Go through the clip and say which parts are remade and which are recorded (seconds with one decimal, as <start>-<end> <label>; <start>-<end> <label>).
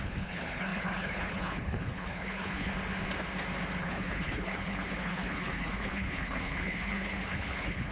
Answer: 0.0-2.7 remade; 2.7-3.8 recorded; 3.8-7.9 remade